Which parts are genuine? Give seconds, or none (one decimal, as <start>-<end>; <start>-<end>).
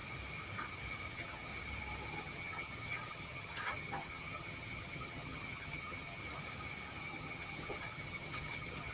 0.0-1.1; 1.5-2.1; 6.2-7.0